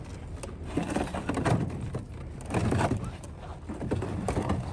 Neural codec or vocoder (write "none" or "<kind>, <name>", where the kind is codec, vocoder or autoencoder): vocoder, BigVGAN v2